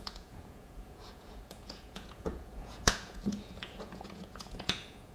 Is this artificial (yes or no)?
yes